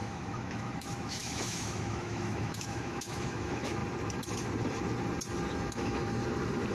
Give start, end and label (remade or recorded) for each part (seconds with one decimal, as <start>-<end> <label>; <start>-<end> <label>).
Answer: 0.0-3.8 remade; 3.8-5.5 recorded; 5.5-6.0 remade; 6.0-6.7 recorded